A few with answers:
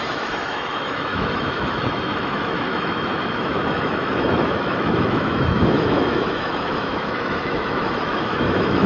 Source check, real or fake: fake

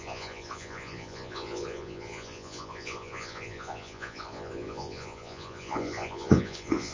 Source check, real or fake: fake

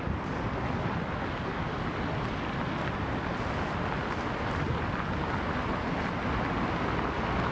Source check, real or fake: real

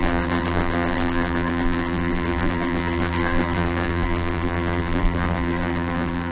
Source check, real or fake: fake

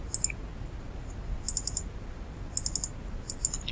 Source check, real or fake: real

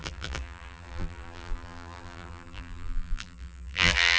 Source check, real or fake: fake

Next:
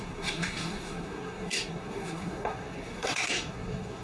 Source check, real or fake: fake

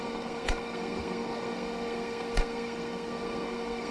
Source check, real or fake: fake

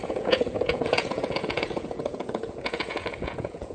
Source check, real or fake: fake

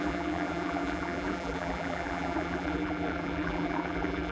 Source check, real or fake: fake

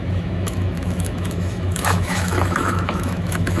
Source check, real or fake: fake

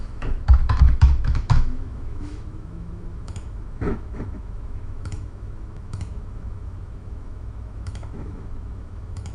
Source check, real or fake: fake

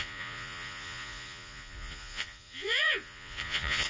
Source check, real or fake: fake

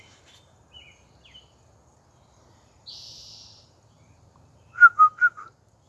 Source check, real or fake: real